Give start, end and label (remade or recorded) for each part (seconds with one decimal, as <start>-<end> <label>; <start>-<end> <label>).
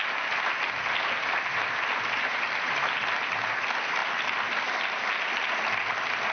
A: 0.0-6.3 recorded